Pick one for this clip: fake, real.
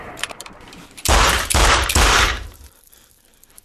fake